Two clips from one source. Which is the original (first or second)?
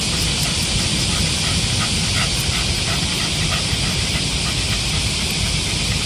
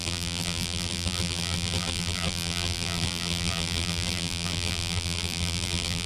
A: first